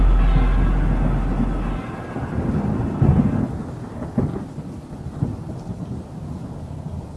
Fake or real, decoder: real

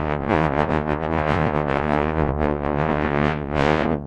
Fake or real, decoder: fake, vocoder, Vocos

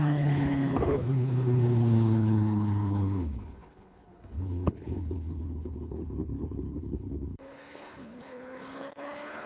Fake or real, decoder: fake, codec, HILCodec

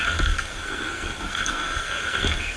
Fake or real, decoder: fake, codec, SNAC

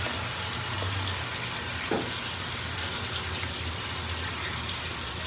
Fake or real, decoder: real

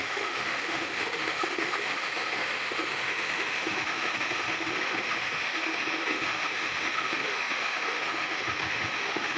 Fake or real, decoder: fake, autoencoder, DAC-VAE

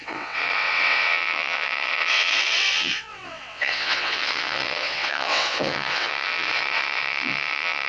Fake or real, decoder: fake, vocoder, WaveNeXt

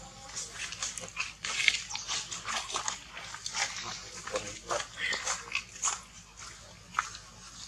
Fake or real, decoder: real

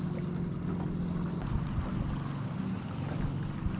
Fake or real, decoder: real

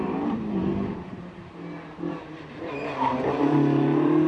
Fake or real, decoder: fake, vocoder, BigVGAN v2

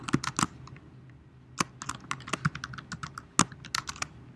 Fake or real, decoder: real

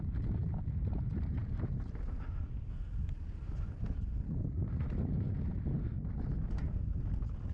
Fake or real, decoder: real